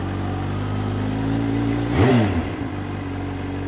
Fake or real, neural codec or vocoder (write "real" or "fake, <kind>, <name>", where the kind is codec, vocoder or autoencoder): real